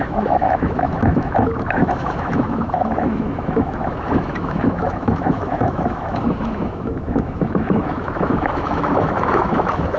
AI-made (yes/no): yes